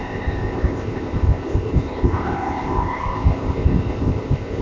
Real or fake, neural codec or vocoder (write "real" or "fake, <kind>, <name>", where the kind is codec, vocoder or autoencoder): fake, codec, ZipCodec